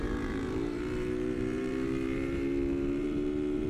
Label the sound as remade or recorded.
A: remade